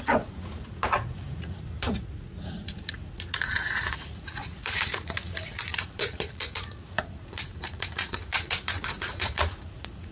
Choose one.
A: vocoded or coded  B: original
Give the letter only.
A